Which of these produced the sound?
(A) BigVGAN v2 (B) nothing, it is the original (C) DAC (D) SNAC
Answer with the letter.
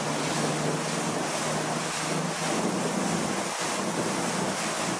B